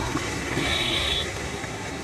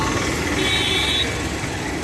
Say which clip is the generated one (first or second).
first